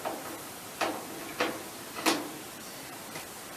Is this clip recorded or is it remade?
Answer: recorded